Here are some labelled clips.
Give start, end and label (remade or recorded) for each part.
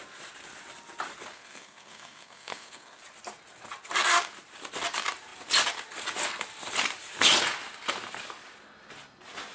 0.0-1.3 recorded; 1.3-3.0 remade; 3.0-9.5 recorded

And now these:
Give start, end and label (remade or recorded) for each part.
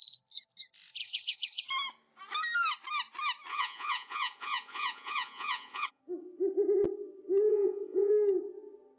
0.0-1.0 recorded; 1.0-1.6 remade; 1.6-3.5 recorded; 3.5-6.0 remade; 6.0-7.5 recorded; 7.5-8.1 remade; 8.1-9.0 recorded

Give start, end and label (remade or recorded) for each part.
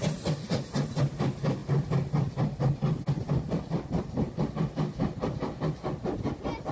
0.0-6.7 recorded